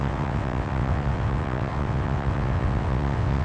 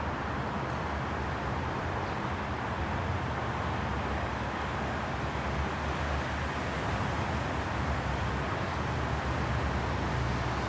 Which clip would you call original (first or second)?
second